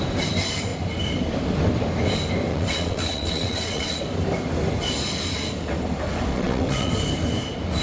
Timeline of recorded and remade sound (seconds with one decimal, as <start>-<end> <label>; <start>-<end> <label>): 0.0-2.5 recorded; 2.5-4.0 remade; 4.0-6.3 recorded; 6.3-6.9 remade; 6.9-7.8 recorded